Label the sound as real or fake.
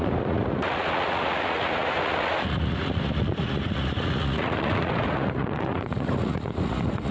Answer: fake